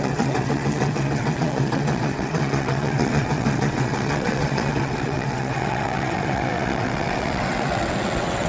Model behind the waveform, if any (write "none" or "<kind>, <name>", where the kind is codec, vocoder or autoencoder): vocoder, WaveNeXt